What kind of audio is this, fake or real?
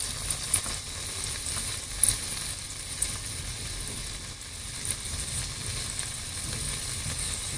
real